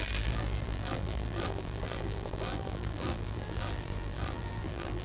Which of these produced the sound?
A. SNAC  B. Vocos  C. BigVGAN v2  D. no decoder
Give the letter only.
C